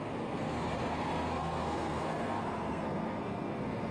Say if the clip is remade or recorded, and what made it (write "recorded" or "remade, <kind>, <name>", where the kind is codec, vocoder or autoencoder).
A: remade, codec, SNAC